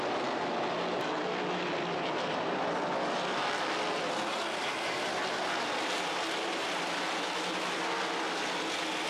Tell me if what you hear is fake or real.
real